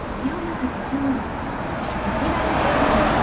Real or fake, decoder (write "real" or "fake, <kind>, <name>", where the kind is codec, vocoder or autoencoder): real